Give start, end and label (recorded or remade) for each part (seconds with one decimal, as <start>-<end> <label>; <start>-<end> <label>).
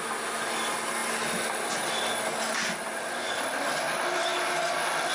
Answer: 0.0-5.1 recorded